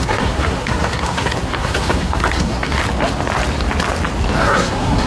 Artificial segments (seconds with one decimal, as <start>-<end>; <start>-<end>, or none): 0.0-2.8; 4.4-5.1